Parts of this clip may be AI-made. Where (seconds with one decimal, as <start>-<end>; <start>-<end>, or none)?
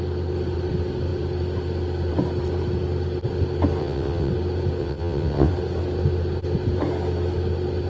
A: 3.8-4.3; 4.8-5.5